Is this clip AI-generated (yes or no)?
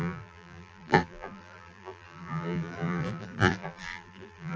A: yes